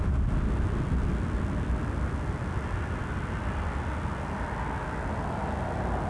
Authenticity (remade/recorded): recorded